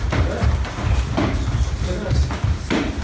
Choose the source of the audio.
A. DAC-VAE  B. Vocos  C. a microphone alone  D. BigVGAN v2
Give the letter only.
C